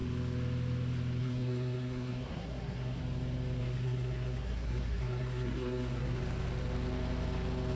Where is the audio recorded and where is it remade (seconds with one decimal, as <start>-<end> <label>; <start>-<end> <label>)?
0.0-1.2 recorded; 1.2-3.0 remade; 3.0-3.6 recorded; 3.6-6.2 remade; 6.2-7.8 recorded